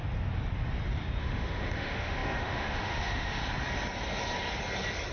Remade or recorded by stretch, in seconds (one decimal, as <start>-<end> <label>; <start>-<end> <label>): 0.0-1.2 recorded; 1.2-3.4 remade; 3.4-5.1 recorded